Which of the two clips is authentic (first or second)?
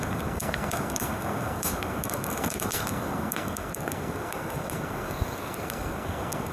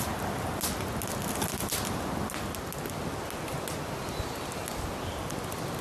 second